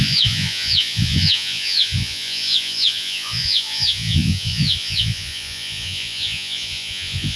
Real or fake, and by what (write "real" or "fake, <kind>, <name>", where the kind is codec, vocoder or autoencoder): fake, vocoder, Vocos